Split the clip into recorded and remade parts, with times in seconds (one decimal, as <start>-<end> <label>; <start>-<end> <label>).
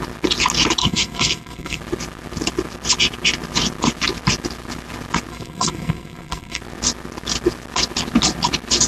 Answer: 0.0-0.8 recorded; 0.8-1.8 remade; 1.8-5.3 recorded; 5.3-6.6 remade; 6.6-8.9 recorded